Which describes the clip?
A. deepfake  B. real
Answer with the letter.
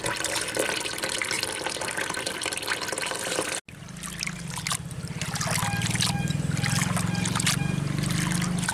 B